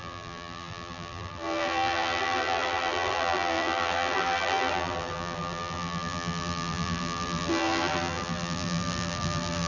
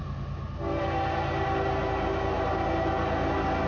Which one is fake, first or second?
first